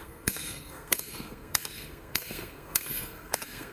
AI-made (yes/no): yes